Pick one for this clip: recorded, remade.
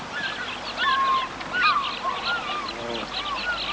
recorded